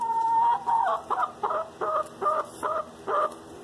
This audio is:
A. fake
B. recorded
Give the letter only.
B